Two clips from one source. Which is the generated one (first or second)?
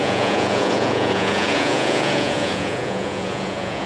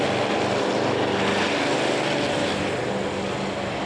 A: first